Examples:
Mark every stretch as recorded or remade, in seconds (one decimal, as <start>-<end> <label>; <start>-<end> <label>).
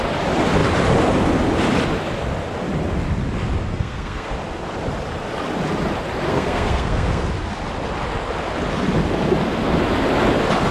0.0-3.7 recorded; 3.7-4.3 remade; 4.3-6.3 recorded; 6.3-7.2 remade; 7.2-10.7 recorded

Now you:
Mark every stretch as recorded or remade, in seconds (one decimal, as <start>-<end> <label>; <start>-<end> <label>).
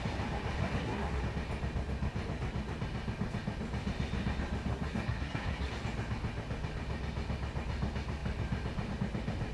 0.0-0.6 recorded; 0.6-1.2 remade; 1.2-4.7 recorded; 4.7-5.7 remade; 5.7-9.5 recorded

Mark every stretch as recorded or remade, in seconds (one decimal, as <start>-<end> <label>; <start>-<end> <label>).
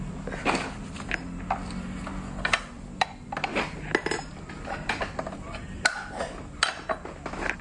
0.0-7.6 recorded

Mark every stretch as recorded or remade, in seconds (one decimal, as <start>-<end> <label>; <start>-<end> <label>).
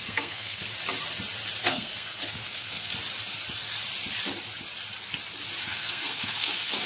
0.0-0.6 remade; 0.6-1.6 recorded; 1.6-2.9 remade; 2.9-5.6 recorded; 5.6-6.9 remade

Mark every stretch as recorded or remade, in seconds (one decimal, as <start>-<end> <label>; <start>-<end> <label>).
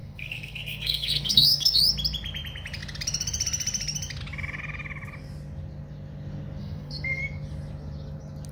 0.0-1.8 remade; 1.8-6.6 recorded; 6.6-7.2 remade; 7.2-8.5 recorded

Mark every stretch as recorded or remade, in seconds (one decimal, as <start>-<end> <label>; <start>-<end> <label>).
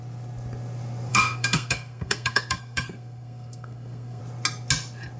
0.0-1.1 recorded; 1.1-4.2 remade; 4.2-5.2 recorded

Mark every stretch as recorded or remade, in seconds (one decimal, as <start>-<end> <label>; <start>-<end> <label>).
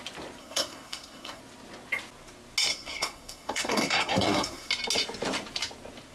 0.0-0.4 recorded; 0.4-1.4 remade; 1.4-2.7 recorded; 2.7-4.7 remade; 4.7-6.1 recorded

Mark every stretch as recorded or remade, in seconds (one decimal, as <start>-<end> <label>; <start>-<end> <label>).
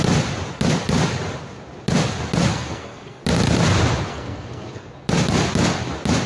0.0-2.5 recorded; 2.5-3.2 remade; 3.2-4.1 recorded; 4.1-4.9 remade; 4.9-6.3 recorded